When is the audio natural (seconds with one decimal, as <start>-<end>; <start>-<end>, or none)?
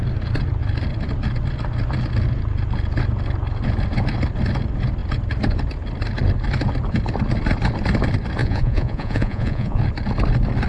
0.0-8.4; 9.8-10.7